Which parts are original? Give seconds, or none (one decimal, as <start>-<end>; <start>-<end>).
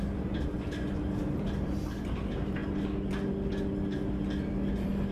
0.0-5.1